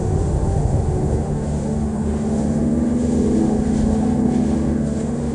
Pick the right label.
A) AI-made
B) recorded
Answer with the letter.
A